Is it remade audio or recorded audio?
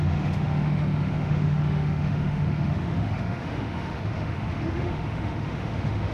remade